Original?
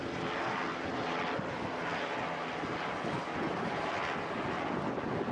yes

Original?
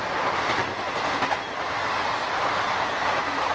yes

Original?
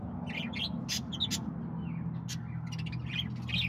yes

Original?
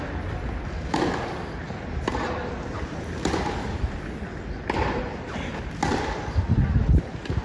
yes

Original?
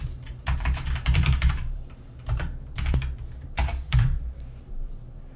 no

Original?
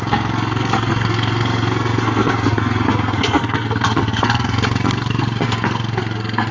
no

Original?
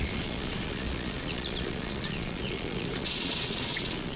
no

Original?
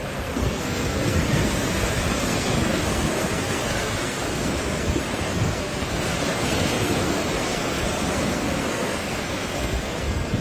no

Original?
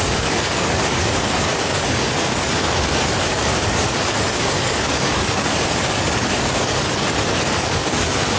no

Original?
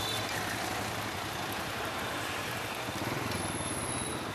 yes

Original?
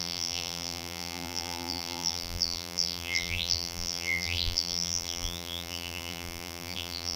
no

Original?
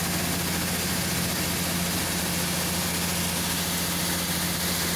yes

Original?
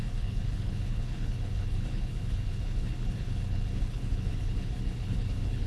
no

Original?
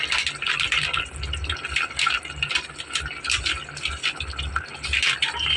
yes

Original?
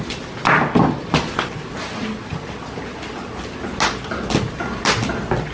yes